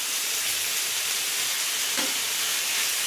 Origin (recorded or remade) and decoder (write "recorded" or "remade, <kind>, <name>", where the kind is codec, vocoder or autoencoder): recorded